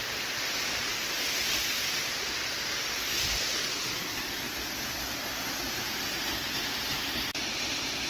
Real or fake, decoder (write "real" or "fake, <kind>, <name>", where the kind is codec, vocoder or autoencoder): real